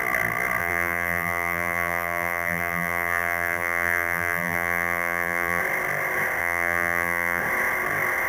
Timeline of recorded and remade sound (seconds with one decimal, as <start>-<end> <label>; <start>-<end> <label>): 0.0-0.6 recorded; 0.6-5.6 remade; 5.6-6.4 recorded; 6.4-7.4 remade; 7.4-8.3 recorded